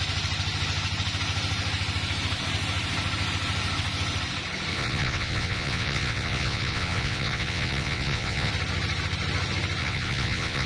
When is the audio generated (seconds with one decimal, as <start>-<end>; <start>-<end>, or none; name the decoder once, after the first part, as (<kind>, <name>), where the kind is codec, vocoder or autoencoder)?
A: 4.7-8.5 (vocoder, WaveNeXt); 9.8-10.7